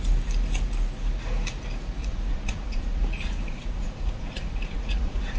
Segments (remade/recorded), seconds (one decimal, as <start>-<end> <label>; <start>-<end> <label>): 0.0-2.0 recorded; 2.0-5.4 remade